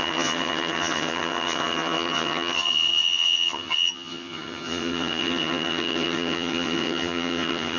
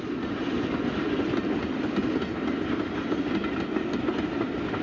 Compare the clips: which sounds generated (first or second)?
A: first